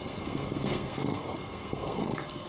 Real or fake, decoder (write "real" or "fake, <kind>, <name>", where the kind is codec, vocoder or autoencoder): fake, codec, SNAC